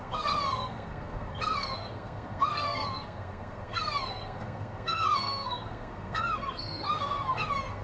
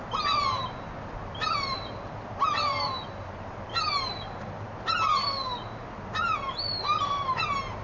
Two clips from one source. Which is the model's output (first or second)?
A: first